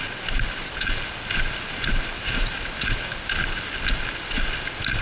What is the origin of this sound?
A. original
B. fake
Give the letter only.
A